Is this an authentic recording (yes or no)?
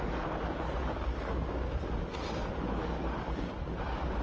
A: yes